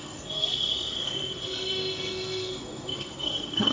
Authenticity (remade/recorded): remade